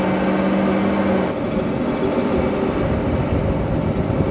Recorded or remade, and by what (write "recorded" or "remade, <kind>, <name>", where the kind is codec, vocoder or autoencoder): recorded